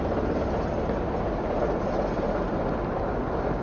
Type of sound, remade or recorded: recorded